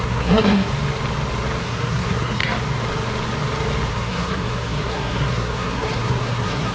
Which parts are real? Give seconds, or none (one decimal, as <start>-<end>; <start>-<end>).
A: 0.7-1.6; 2.4-3.9